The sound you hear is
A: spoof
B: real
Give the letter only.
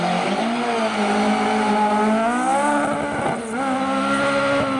B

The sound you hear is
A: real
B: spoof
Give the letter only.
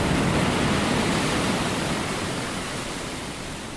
A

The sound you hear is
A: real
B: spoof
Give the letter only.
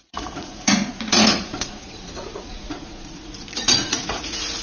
B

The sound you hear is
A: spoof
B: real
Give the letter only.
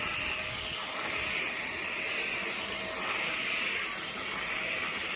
B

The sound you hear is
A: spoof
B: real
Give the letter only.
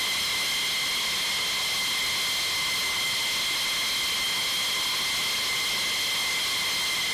B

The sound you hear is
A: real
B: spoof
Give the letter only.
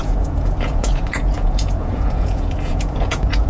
B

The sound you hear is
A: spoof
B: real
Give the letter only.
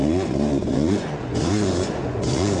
A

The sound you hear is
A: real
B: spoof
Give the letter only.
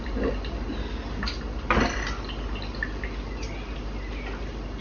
A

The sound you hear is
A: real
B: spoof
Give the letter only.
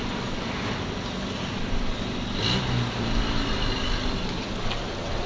A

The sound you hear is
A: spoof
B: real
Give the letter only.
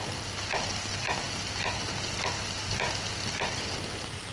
B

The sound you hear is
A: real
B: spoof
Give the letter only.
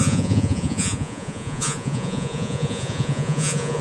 B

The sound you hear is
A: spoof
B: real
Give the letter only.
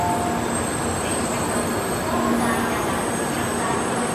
B